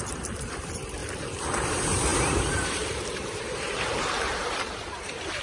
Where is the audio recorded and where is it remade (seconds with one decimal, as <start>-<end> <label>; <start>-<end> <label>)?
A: 0.0-1.0 remade; 1.0-1.7 recorded; 1.7-5.4 remade